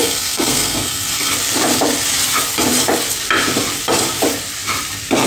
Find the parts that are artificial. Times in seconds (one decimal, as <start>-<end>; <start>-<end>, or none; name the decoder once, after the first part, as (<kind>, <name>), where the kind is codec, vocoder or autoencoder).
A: 0.0-1.3 (codec, SNAC)